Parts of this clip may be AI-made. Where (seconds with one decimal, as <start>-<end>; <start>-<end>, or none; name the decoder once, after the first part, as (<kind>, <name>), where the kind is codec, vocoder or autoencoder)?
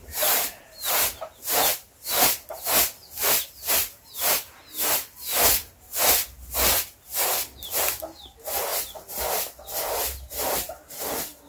3.0-4.5 (vocoder, BigVGAN v2); 8.7-9.2